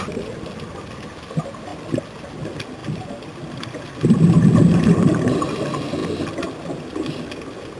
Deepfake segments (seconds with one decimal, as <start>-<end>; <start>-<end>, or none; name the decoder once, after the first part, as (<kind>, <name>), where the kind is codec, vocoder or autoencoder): none